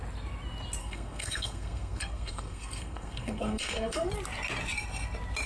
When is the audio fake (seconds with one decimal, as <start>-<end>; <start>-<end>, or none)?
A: 0.8-4.1